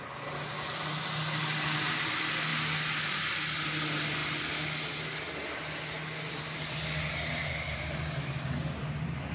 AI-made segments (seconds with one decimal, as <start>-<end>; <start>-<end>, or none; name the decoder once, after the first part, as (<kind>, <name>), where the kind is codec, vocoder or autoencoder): none